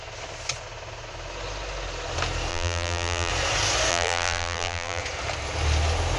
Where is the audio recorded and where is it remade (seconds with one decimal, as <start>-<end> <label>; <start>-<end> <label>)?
0.0-2.5 recorded; 2.5-3.3 remade; 3.3-3.9 recorded; 3.9-5.0 remade; 5.0-6.2 recorded